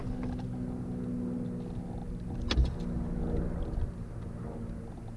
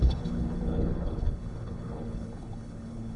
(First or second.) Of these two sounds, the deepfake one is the second